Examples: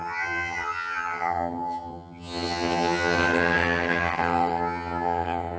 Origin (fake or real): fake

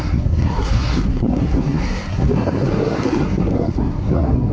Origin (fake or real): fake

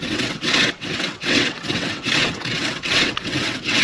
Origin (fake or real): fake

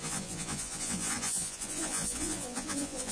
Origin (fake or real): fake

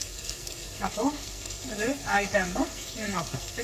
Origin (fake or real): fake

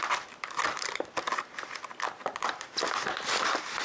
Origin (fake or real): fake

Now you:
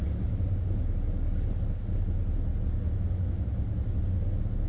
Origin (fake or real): real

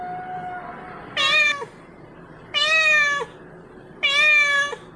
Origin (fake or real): real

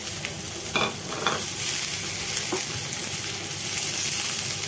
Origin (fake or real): real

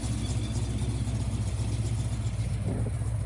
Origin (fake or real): real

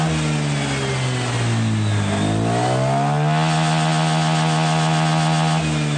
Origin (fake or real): real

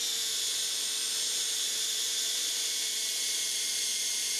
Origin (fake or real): fake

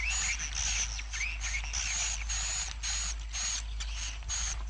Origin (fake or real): real